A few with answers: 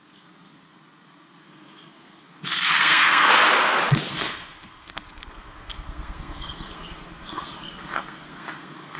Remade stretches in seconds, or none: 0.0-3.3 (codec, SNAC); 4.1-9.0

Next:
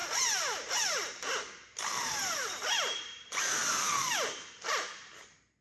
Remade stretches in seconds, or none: 0.0-5.6 (vocoder, BigVGAN v2)

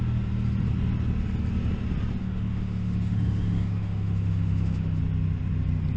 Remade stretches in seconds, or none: 2.2-5.0 (autoencoder, DAC-VAE)

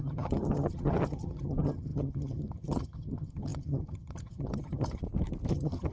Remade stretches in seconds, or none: 0.0-5.0 (vocoder, HiFi-GAN); 5.5-5.9